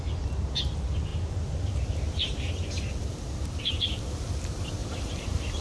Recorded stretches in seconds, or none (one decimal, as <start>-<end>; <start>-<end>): 0.0-4.8